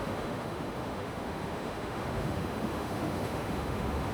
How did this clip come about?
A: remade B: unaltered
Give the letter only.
A